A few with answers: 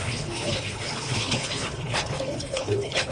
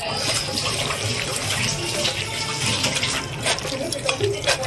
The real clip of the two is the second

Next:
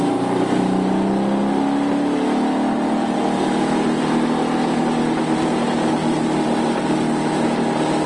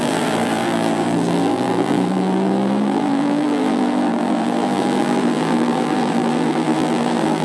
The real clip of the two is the first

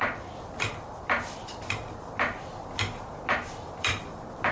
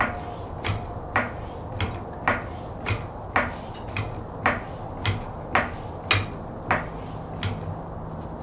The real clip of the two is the second